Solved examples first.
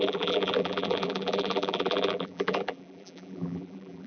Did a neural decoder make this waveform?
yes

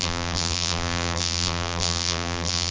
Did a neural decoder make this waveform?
yes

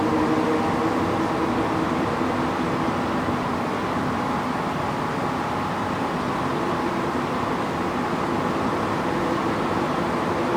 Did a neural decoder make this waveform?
no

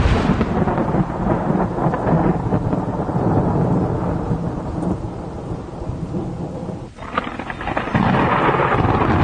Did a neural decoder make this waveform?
no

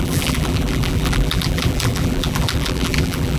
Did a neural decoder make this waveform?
yes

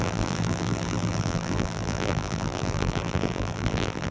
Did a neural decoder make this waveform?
yes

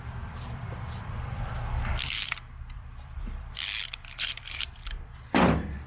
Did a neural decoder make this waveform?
yes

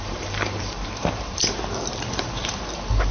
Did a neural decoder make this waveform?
yes